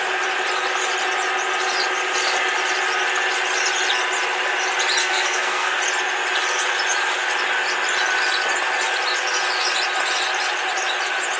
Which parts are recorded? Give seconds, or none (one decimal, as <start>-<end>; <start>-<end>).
0.0-5.0; 5.8-11.4